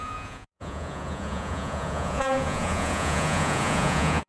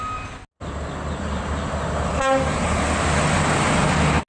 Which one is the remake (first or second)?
first